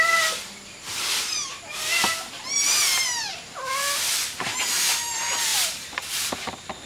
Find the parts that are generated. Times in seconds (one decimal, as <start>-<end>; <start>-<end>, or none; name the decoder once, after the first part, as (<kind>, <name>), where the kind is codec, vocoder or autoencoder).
0.0-2.8 (vocoder, BigVGAN v2); 3.3-6.9